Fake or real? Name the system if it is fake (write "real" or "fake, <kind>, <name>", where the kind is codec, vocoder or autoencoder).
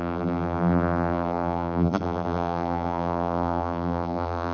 fake, vocoder, BigVGAN v2